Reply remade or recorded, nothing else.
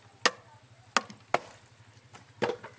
recorded